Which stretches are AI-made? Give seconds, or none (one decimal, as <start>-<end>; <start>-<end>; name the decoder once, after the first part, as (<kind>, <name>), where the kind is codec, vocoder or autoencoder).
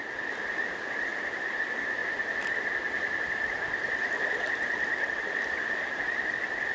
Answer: none